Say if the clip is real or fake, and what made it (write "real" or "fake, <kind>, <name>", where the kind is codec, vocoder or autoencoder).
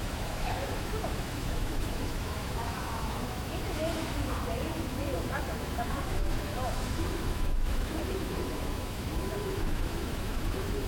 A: fake, autoencoder, DAC-VAE